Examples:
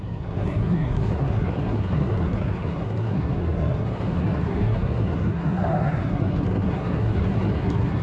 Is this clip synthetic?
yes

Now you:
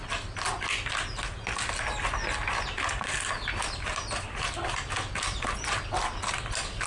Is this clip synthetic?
no